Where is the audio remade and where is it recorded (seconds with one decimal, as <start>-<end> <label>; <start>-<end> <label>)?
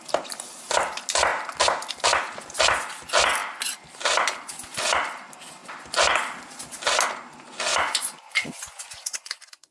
0.0-7.7 recorded; 7.7-9.7 remade